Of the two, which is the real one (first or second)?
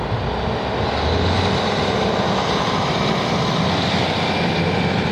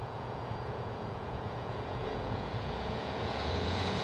first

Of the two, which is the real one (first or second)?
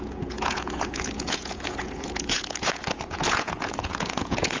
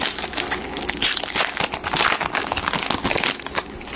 second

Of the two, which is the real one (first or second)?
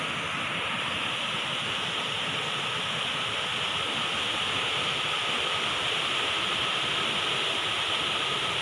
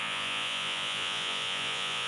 first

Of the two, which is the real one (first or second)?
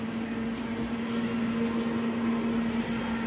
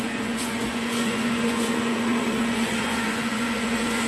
first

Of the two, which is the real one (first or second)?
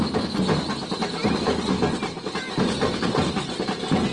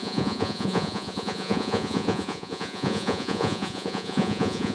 first